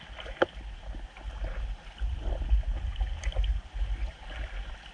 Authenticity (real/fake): real